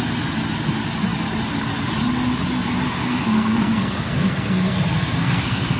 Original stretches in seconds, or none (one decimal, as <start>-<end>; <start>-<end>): 0.0-3.0